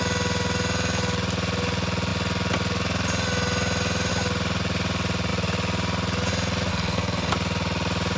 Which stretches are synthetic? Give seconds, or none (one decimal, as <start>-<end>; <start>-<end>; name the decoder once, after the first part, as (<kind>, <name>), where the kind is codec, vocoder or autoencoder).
6.7-7.3 (codec, SNAC)